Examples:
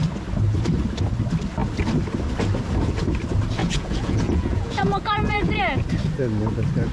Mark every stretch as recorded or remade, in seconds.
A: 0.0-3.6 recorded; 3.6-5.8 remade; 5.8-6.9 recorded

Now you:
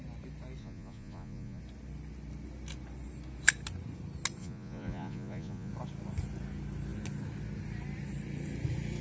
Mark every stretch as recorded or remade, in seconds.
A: 0.0-0.6 recorded; 0.6-1.6 remade; 1.6-4.4 recorded; 4.4-5.7 remade; 5.7-9.0 recorded